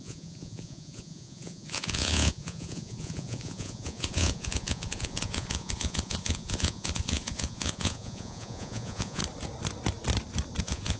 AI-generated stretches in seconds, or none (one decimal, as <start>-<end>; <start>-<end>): 0.0-9.2; 10.6-11.0

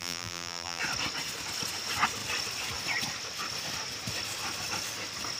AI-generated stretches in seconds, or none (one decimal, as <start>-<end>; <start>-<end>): 0.0-0.8

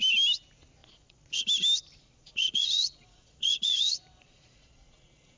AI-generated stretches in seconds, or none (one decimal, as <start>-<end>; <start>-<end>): 0.8-1.4; 2.0-5.4

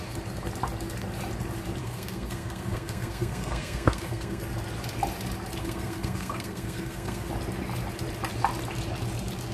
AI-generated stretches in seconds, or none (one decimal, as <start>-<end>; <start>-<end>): 1.8-4.4; 5.6-7.3

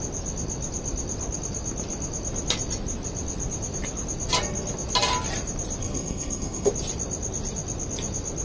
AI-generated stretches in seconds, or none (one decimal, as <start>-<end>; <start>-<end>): 5.8-6.7

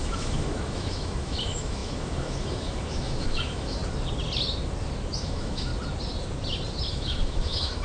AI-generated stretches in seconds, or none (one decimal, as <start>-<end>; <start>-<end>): 0.0-3.8; 5.2-5.7; 6.9-7.8

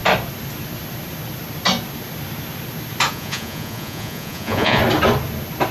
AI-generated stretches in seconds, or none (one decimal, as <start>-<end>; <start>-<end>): 3.1-4.8

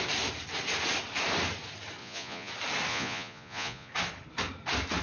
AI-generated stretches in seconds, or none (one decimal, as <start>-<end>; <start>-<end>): 2.0-2.5; 2.9-3.9